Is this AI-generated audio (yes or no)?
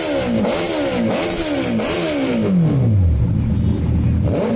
no